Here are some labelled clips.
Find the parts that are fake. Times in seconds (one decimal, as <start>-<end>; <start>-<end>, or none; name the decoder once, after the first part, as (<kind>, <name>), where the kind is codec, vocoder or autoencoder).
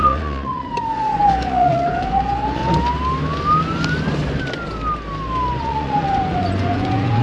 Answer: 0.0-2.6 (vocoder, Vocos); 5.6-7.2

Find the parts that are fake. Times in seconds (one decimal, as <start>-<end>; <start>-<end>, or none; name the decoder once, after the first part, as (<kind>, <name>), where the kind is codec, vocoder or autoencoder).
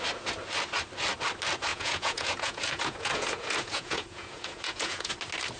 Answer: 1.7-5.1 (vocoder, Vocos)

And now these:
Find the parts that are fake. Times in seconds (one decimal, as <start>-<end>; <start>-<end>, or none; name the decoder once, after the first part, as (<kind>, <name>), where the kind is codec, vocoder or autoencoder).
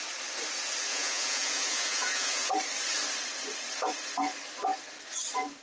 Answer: 0.9-2.5 (vocoder, Vocos)